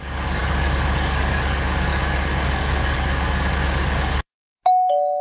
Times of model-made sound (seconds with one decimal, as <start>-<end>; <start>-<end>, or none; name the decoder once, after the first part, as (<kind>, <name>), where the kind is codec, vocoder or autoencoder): 0.0-5.2 (codec, DAC)